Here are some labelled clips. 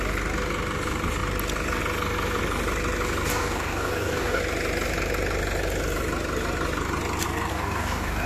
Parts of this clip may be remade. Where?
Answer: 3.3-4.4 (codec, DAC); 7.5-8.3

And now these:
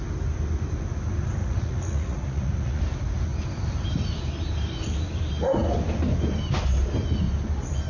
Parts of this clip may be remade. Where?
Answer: 1.4-2.8 (vocoder, Vocos)

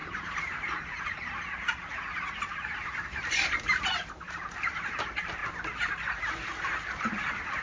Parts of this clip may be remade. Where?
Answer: 0.0-5.4 (vocoder, BigVGAN v2); 7.0-7.6

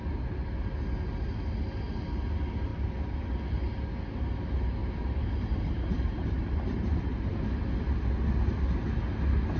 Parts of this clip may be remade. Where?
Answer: 2.7-3.4 (vocoder, BigVGAN v2); 4.8-7.3